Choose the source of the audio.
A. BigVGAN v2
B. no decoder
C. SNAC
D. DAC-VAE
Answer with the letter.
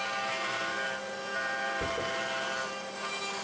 A